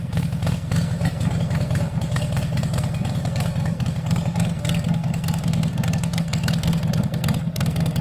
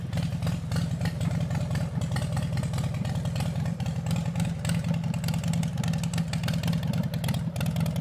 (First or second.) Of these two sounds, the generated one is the first